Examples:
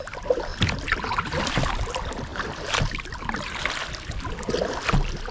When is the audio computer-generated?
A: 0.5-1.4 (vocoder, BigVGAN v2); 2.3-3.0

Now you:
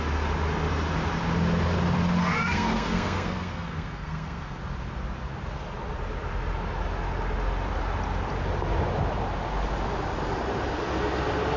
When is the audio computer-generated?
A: 2.2-4.6 (codec, SNAC)

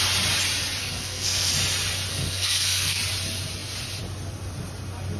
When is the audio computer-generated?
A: 0.8-1.5 (codec, SNAC); 2.1-3.0